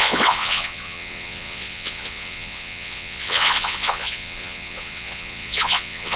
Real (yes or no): no